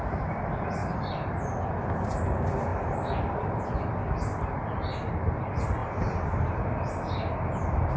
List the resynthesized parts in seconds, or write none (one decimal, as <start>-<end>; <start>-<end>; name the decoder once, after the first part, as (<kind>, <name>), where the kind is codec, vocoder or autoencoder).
0.8-1.7 (vocoder, BigVGAN v2); 2.7-3.6